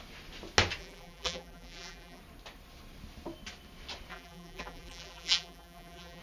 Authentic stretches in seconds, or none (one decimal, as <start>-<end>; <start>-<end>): 0.0-0.8; 2.2-4.1

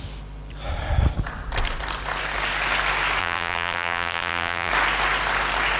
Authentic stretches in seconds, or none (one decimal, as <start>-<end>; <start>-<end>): 0.0-3.2; 4.7-5.8

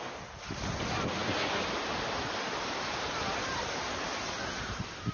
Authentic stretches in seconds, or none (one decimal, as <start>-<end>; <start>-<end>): 0.0-5.1

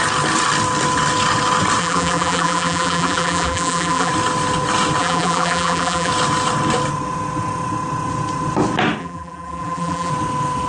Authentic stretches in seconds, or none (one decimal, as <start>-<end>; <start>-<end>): 0.0-1.8; 4.1-5.0; 6.1-9.0; 10.1-10.7

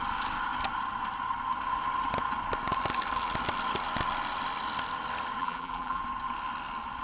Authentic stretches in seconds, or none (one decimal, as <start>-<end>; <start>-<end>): 0.0-5.4; 6.0-7.0

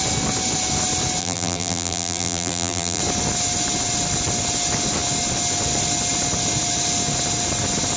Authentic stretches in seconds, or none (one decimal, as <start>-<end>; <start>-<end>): 0.0-1.2; 3.0-8.0